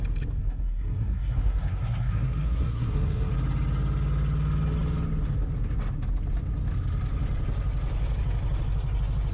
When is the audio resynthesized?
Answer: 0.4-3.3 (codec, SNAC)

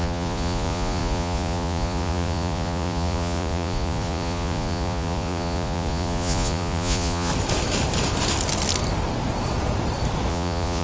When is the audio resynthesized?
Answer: 0.0-7.3 (vocoder, Vocos); 10.3-10.8

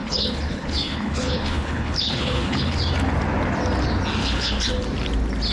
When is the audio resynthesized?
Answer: 0.0-2.8 (codec, HILCodec); 4.2-4.7